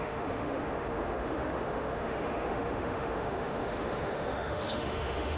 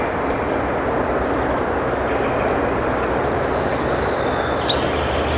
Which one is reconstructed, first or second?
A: first